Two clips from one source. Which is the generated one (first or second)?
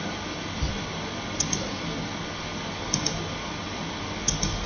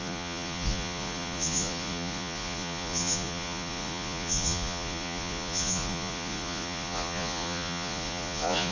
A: second